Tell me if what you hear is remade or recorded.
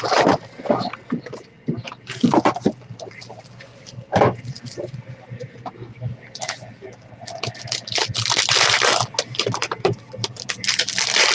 remade